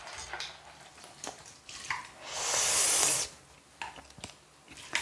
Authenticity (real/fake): real